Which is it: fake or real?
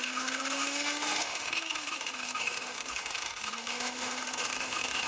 fake